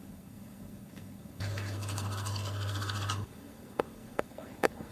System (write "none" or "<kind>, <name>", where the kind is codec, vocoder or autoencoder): codec, SNAC